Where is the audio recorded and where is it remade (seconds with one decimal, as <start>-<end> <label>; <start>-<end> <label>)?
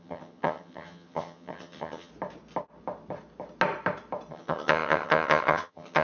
0.0-2.1 remade; 2.1-4.3 recorded; 4.3-6.0 remade